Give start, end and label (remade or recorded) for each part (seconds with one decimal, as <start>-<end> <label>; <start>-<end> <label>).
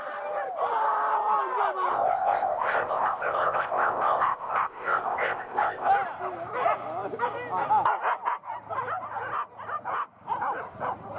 0.0-1.9 recorded; 1.9-5.9 remade; 5.9-11.2 recorded